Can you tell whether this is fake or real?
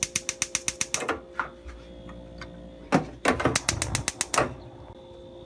real